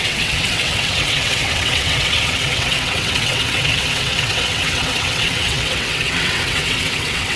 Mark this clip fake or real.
fake